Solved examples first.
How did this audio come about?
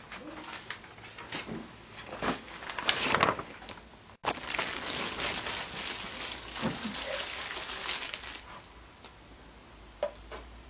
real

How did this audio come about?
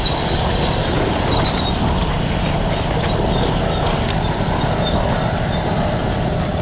real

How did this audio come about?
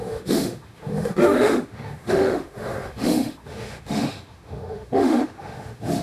fake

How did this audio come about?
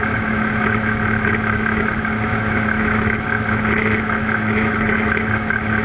fake